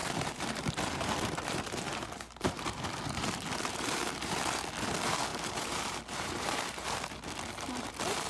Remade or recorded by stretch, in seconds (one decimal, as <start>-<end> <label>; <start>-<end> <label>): 0.0-4.4 remade; 4.4-5.3 recorded; 5.3-7.1 remade; 7.1-8.3 recorded